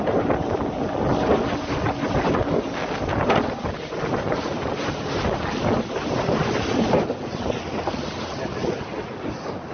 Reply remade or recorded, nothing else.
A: recorded